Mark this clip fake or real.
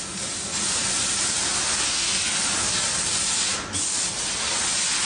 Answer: real